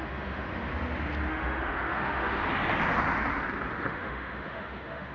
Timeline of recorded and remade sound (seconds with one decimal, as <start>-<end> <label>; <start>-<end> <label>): 0.0-0.7 remade; 0.7-1.3 recorded; 1.3-2.4 remade; 2.4-3.8 recorded; 3.8-5.1 remade